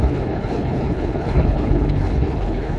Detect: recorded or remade remade